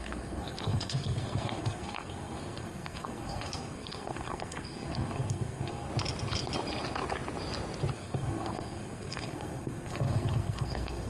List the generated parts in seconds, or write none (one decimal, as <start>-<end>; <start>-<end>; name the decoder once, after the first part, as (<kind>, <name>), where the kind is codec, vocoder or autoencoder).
0.0-5.9 (codec, SNAC); 7.9-11.1

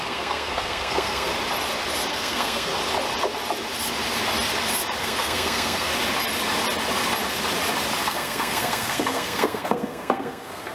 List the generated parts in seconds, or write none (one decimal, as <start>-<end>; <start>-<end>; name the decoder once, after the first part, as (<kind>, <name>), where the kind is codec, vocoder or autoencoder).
0.0-1.3 (codec, SNAC); 2.1-2.7; 5.0-5.9; 8.0-10.7

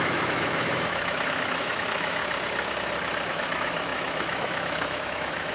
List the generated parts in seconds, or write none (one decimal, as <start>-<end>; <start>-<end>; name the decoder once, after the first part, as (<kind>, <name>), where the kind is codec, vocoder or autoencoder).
0.0-2.2 (autoencoder, DAC-VAE); 3.3-5.5

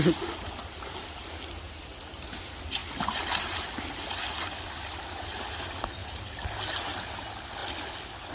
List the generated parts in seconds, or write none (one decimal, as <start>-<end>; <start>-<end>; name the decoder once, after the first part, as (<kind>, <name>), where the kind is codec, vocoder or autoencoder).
none

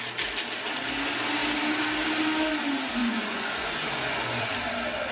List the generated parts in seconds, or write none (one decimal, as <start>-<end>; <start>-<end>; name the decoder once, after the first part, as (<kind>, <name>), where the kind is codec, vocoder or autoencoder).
3.0-4.5 (vocoder, Vocos)